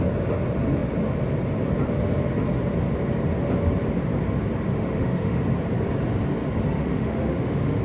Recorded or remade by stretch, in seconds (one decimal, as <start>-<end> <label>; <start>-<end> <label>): 0.0-4.7 recorded; 4.7-5.4 remade; 5.4-6.8 recorded; 6.8-7.8 remade